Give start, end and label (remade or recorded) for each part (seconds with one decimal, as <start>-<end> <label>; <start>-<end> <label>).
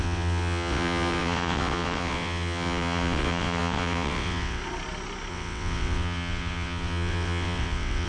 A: 0.0-4.6 remade; 4.6-5.3 recorded; 5.3-8.1 remade